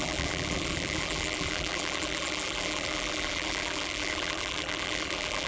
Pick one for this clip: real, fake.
fake